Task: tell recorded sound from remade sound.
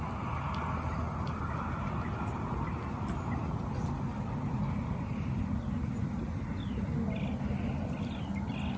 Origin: recorded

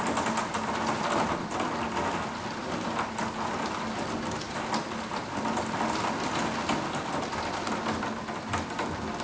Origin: recorded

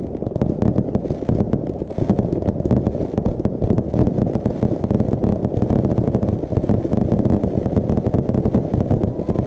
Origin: recorded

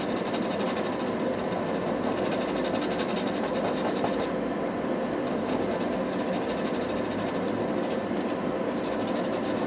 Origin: recorded